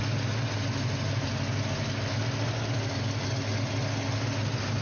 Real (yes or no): yes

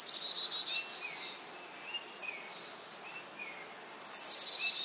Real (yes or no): yes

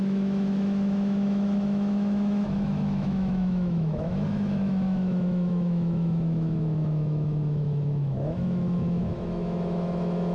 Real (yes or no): no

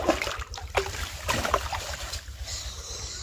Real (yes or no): yes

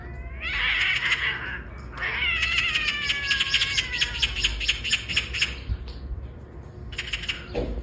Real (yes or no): yes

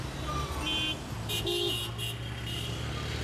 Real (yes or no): yes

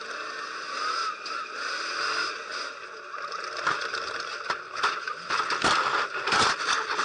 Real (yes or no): yes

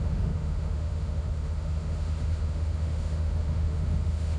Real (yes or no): no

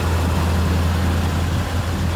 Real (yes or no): yes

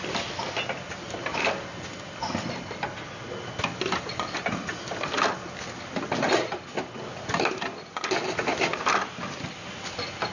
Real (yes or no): yes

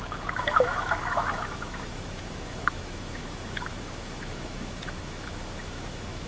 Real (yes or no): no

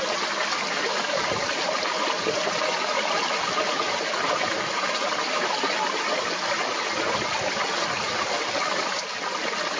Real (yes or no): yes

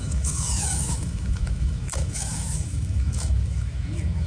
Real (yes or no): no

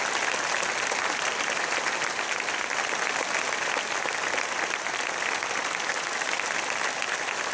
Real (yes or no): yes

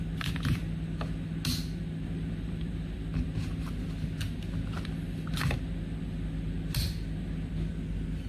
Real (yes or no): yes